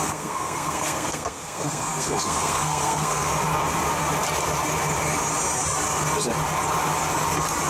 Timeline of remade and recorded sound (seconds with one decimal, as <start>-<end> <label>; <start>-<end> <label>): 0.0-3.3 remade; 3.3-7.7 recorded